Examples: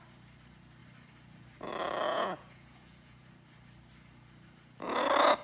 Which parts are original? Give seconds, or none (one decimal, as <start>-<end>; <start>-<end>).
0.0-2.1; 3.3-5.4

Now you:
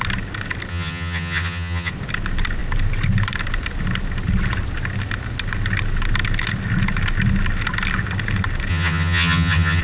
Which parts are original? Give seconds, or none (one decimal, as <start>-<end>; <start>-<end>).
0.0-0.7; 1.9-8.7

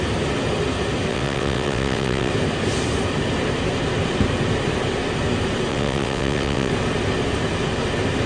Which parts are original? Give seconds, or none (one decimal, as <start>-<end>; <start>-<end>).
0.0-1.1; 2.3-5.7; 6.7-8.3